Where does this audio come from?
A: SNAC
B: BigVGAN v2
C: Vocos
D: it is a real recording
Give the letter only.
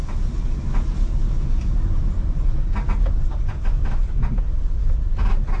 D